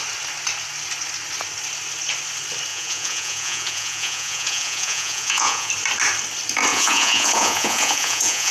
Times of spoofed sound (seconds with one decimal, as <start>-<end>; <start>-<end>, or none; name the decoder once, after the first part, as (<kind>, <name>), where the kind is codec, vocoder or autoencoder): 2.7-5.7 (vocoder, Vocos); 6.7-8.5

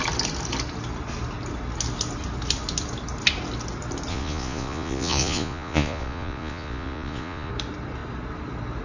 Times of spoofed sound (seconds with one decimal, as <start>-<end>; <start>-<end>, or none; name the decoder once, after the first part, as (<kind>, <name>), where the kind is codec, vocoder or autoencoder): 4.1-7.5 (vocoder, Vocos)

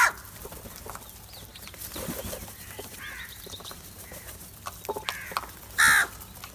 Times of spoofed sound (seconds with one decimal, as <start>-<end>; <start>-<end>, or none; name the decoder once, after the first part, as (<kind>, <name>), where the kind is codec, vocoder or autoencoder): 1.5-4.5 (vocoder, BigVGAN v2)

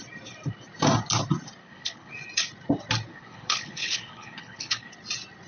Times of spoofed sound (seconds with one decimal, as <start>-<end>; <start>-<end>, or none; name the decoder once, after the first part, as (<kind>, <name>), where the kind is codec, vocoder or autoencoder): 1.6-2.1 (codec, HILCodec); 3.1-4.9

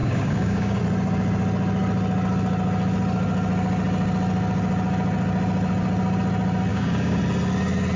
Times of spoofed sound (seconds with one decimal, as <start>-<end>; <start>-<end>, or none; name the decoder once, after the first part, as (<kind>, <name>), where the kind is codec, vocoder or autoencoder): 0.0-0.8 (codec, DAC); 6.7-7.2

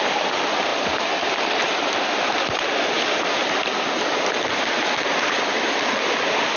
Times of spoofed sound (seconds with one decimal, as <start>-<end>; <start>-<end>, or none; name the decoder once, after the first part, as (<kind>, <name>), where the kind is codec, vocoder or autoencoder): none

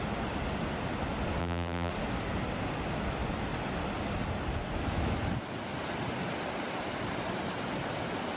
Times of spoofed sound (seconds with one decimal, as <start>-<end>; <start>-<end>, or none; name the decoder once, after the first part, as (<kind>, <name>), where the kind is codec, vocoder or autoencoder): 1.4-1.9 (vocoder, BigVGAN v2)

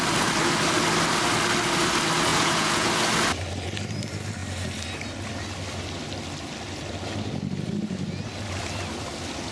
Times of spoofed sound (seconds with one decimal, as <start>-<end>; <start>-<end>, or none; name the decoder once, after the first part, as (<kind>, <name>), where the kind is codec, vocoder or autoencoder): 2.3-2.9 (vocoder, Vocos)